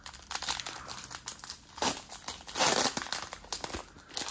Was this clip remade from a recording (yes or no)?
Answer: no